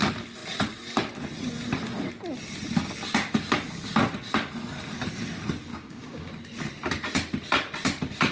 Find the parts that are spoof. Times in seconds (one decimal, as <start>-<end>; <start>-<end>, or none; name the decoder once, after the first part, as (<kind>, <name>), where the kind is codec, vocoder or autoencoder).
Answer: 5.7-6.3 (codec, DAC)